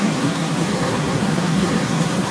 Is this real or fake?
fake